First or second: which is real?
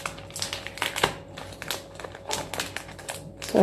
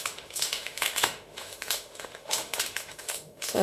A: first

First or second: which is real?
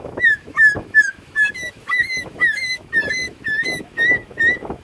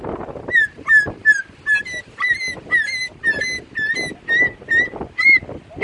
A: second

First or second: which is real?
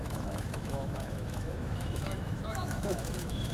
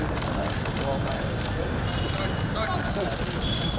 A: second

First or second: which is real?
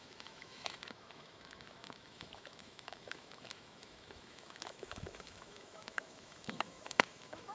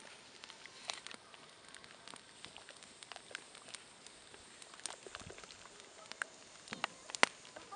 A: second